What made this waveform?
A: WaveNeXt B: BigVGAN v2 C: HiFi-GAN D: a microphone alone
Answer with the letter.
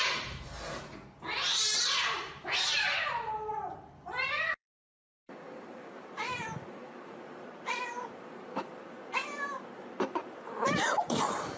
B